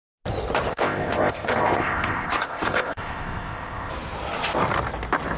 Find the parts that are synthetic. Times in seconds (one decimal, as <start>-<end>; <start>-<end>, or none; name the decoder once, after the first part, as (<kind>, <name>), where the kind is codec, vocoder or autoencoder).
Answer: 0.7-3.9 (codec, ZipCodec)